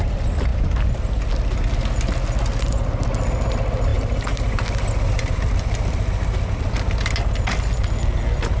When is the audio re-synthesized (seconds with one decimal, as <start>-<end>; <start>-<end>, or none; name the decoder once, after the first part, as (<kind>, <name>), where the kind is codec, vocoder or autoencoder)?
none